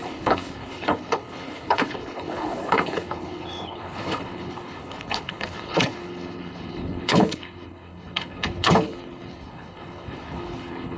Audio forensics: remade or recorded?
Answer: remade